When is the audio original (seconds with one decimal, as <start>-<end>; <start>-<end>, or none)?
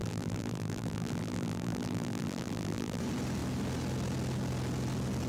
3.0-5.3